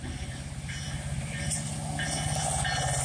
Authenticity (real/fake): real